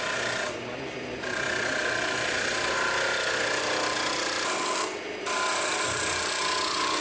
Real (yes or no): yes